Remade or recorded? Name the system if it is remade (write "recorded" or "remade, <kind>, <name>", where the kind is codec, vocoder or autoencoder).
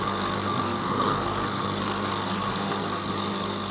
remade, codec, SNAC